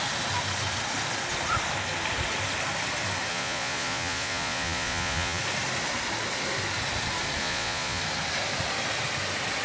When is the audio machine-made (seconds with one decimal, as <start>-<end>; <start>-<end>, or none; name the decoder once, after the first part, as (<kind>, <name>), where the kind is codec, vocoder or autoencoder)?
3.3-5.4 (vocoder, Vocos); 7.4-8.0